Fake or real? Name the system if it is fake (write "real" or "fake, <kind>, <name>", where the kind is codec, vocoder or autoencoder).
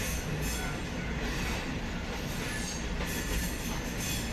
real